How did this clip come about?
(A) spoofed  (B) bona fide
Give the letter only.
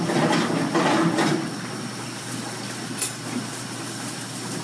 B